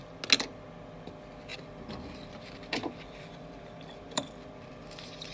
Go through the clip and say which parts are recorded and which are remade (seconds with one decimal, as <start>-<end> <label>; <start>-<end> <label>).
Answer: 0.0-1.5 recorded; 1.5-4.7 remade; 4.7-5.3 recorded